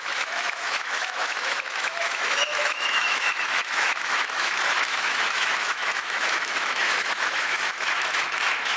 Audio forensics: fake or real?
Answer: fake